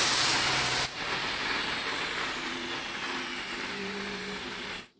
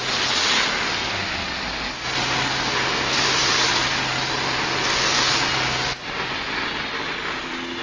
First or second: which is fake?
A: first